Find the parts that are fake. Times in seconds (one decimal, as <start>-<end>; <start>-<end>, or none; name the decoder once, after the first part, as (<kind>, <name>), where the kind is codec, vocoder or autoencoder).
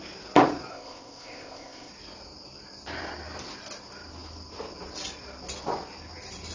0.7-1.9 (codec, ZipCodec)